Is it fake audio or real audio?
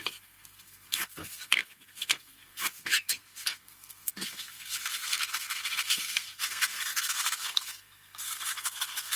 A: fake